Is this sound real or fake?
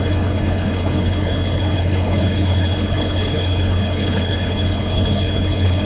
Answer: fake